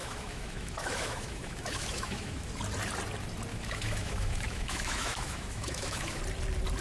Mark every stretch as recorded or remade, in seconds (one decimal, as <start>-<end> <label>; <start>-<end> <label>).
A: 0.0-2.5 remade; 2.5-3.5 recorded; 3.5-6.2 remade; 6.2-6.8 recorded